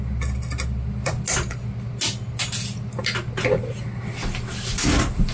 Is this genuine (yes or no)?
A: yes